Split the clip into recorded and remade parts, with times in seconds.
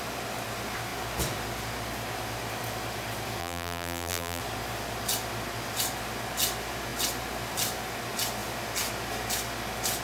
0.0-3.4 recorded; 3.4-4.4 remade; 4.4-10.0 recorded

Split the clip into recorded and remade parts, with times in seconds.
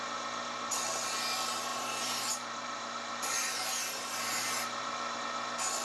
0.0-1.7 recorded; 1.7-5.2 remade; 5.2-5.8 recorded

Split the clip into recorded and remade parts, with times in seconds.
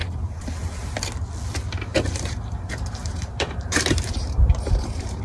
0.0-0.5 remade; 0.5-1.9 recorded; 1.9-5.2 remade